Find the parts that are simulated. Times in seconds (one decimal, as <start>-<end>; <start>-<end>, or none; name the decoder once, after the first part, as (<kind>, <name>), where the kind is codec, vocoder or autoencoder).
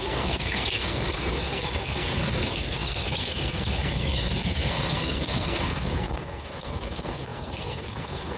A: 0.0-8.4 (codec, SNAC)